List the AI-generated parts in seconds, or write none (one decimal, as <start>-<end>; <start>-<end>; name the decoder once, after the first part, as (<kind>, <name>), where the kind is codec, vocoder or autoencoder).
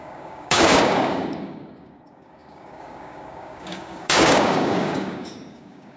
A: 0.0-6.0 (codec, DAC)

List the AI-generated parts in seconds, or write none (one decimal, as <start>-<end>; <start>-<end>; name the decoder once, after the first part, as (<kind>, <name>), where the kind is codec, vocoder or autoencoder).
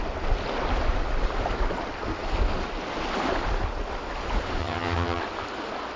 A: 4.6-5.2 (vocoder, HiFi-GAN)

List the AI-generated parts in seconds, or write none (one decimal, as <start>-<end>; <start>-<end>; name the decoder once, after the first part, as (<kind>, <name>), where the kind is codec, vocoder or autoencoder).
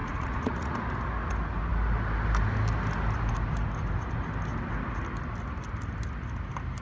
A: 0.0-0.7 (vocoder, Vocos)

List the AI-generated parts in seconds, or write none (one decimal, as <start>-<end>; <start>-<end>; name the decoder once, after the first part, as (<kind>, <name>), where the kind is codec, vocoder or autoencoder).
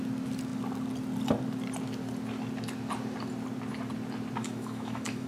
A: 4.4-5.3 (autoencoder, DAC-VAE)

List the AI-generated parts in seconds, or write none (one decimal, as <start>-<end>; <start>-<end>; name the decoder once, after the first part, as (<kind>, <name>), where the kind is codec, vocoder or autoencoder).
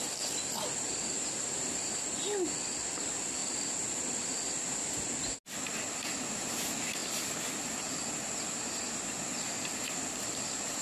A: 0.0-3.4 (vocoder, BigVGAN v2); 6.1-7.0; 7.9-10.8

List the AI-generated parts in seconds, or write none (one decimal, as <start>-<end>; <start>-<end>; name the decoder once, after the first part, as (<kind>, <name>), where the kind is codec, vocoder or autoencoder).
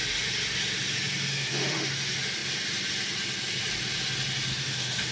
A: 1.3-1.9 (autoencoder, DAC-VAE); 4.5-5.1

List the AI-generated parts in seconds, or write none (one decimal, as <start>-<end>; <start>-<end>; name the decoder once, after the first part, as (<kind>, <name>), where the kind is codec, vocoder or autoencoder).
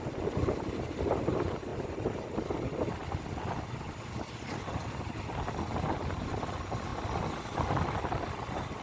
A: none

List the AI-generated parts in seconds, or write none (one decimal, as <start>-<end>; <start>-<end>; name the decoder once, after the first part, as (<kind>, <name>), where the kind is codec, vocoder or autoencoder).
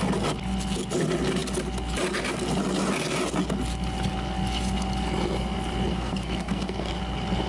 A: 5.9-6.9 (codec, SNAC)